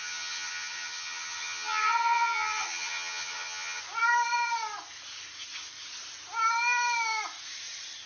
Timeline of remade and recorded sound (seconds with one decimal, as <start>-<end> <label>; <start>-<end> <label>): 0.0-3.8 remade; 3.8-8.1 recorded